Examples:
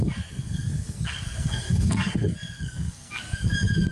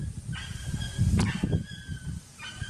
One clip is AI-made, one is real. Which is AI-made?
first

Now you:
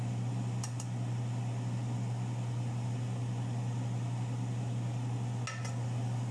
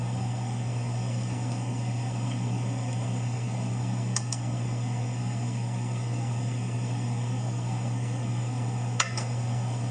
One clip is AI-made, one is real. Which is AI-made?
second